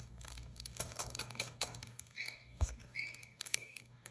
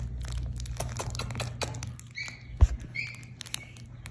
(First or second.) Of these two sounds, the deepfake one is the first